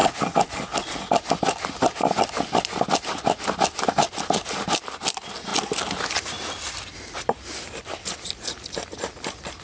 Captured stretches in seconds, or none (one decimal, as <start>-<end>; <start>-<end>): 0.0-9.6